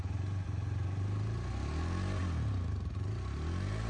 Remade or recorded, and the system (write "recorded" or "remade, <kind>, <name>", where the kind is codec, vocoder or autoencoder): recorded